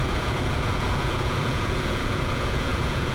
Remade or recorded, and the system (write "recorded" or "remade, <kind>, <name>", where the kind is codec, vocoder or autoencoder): remade, vocoder, Vocos